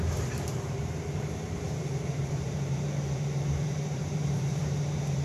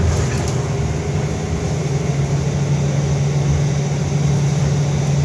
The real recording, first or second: second